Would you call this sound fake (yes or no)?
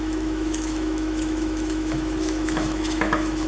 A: yes